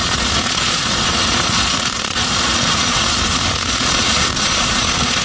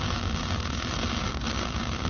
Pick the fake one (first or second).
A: first